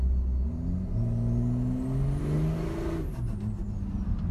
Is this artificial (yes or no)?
no